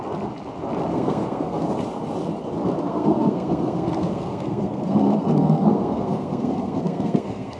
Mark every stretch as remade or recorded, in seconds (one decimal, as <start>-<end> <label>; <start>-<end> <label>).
0.0-0.9 recorded; 0.9-1.6 remade; 1.6-2.9 recorded; 2.9-7.6 remade